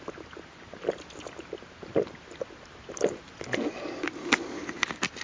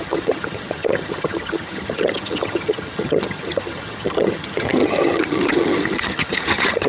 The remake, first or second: second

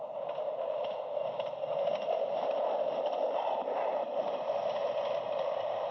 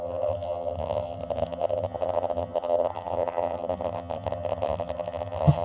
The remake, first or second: second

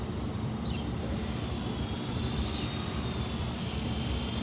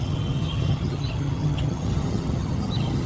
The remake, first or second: second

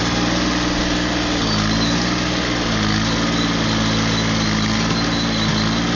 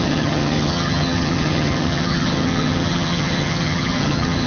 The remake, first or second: second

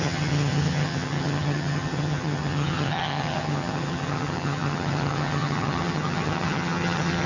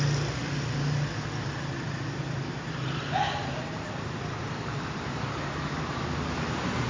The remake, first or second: first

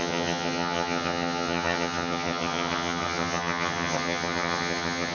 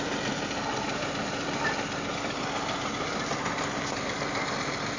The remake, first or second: first